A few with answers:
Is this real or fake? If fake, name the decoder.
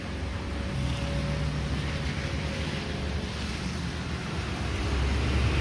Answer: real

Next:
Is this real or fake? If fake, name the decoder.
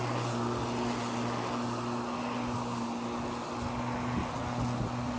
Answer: real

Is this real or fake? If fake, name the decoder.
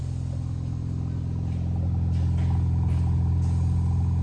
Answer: real